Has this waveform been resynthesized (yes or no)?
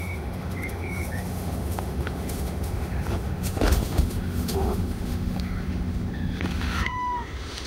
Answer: yes